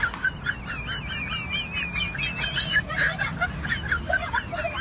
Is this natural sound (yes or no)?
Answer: yes